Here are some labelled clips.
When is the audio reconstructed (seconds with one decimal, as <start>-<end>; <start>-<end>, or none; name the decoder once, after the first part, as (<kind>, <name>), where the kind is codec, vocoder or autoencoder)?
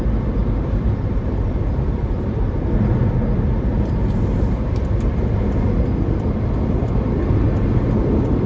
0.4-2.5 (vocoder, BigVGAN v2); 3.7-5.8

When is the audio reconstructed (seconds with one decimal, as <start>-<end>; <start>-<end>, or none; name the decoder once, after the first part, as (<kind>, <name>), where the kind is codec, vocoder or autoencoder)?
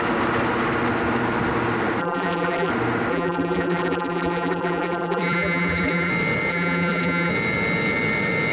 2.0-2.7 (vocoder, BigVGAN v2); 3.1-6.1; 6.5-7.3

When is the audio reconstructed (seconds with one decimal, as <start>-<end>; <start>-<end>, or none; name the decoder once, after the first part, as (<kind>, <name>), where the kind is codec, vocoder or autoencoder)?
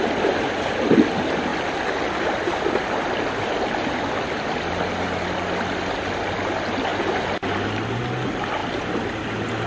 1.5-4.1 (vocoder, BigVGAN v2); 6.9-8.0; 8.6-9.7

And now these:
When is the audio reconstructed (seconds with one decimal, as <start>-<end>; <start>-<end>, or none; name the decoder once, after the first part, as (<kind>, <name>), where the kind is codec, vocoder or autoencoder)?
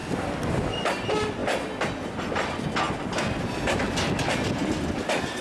none